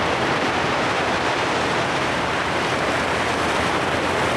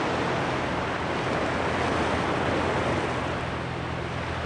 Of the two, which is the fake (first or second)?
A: first